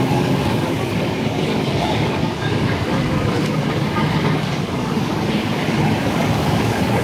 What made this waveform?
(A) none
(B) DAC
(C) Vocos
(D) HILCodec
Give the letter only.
B